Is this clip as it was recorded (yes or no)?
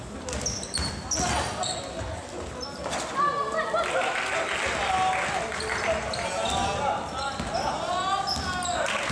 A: yes